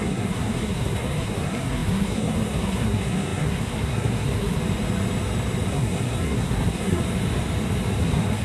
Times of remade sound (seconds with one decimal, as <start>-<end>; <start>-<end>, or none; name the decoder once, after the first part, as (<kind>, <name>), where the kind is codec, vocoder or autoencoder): 0.0-4.6 (codec, SNAC); 5.7-7.0; 8.0-8.4